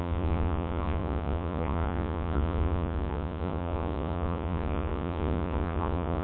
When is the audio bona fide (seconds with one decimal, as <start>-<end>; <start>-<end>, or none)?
none